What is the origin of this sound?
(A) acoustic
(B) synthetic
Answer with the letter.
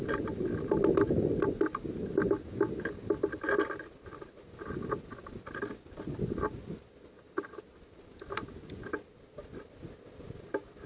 A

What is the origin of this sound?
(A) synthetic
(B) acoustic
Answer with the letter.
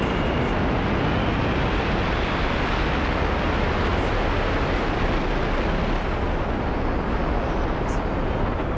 B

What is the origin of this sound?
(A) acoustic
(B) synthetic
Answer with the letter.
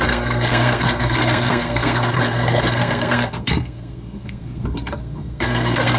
B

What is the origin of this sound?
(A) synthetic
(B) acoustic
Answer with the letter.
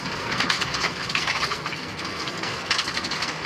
A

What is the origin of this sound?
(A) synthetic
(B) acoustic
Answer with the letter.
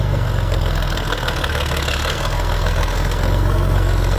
A